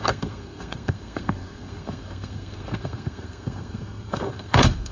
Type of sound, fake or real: fake